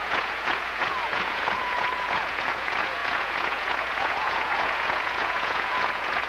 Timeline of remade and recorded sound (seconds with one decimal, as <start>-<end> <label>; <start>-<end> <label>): 0.0-6.3 remade